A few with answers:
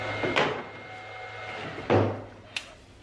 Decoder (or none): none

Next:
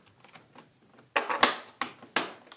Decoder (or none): none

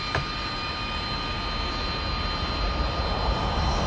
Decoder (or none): none